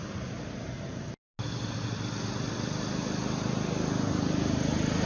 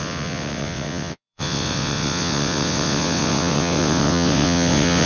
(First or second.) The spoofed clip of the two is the second